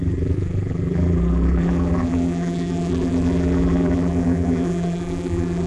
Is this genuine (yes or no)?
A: no